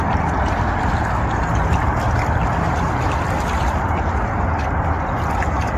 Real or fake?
real